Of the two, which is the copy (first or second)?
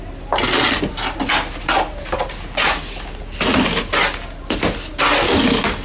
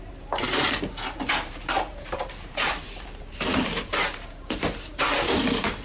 second